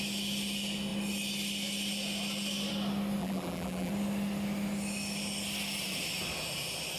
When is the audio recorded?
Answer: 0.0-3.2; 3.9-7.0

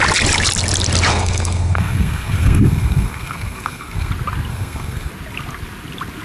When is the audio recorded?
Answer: 0.0-1.1; 4.1-4.5; 5.1-6.2

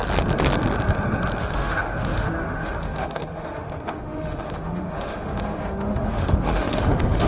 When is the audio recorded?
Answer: 0.0-1.4

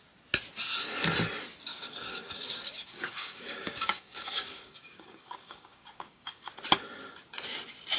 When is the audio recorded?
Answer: 0.0-1.7; 6.5-8.0

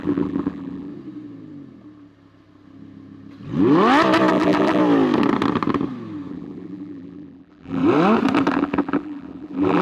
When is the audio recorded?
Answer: 0.9-4.3; 4.8-6.3; 7.8-8.5

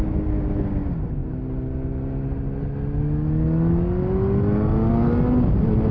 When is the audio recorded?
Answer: 0.0-5.9

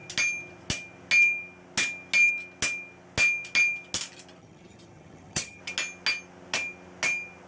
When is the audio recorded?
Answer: 0.0-4.4; 5.6-7.5